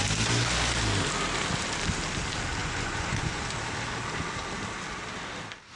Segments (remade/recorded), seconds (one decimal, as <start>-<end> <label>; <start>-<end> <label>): 0.0-2.6 recorded; 2.6-3.4 remade; 3.4-5.8 recorded